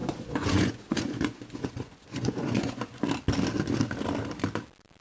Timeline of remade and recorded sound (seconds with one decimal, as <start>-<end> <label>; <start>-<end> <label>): 0.0-3.0 remade; 3.0-5.0 recorded